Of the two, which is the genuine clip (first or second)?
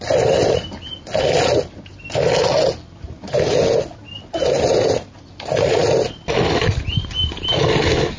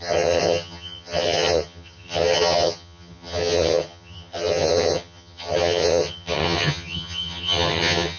first